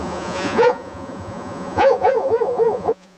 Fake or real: fake